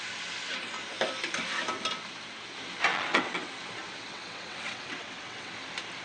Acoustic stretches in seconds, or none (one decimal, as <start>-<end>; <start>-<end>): 0.0-2.9; 3.5-4.1; 5.5-6.0